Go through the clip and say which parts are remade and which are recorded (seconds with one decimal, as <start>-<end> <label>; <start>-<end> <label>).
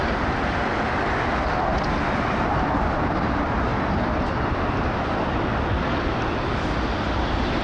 0.0-7.6 recorded